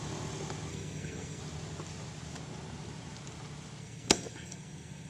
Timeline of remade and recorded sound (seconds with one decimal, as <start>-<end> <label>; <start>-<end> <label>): 0.0-0.7 recorded; 0.7-1.4 remade; 1.4-3.8 recorded; 3.8-5.1 remade